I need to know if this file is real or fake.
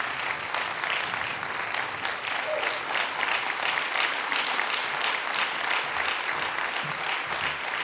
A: real